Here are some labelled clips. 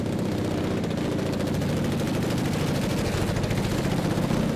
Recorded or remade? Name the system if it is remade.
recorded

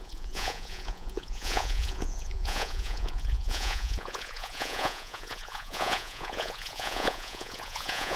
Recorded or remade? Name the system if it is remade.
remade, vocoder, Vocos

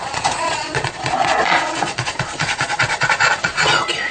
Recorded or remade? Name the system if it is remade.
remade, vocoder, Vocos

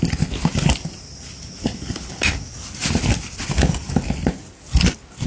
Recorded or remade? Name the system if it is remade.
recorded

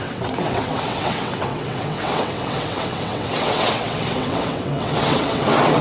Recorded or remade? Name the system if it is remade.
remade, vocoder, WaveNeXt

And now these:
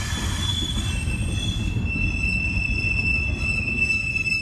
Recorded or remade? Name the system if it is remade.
recorded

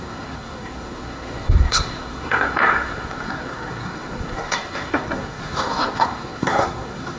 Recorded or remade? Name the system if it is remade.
remade, codec, SNAC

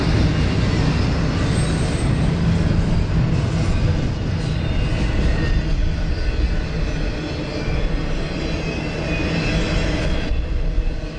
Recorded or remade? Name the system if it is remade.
recorded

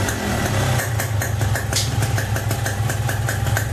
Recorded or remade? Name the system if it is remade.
recorded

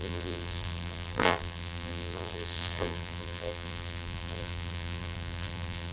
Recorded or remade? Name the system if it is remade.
remade, vocoder, BigVGAN v2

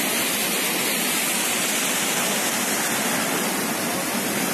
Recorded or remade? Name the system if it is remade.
recorded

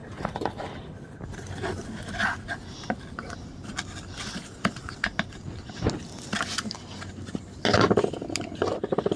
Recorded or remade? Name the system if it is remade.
recorded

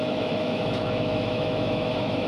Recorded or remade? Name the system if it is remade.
remade, autoencoder, DAC-VAE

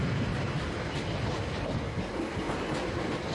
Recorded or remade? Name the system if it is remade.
recorded